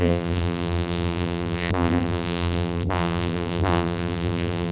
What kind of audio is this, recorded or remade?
remade